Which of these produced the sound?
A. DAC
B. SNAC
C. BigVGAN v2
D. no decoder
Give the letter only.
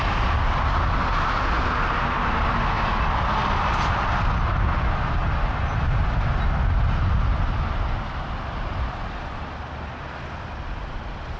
D